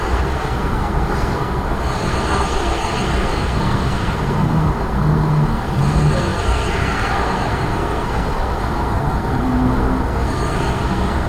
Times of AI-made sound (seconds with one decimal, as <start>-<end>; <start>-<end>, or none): 0.0-11.3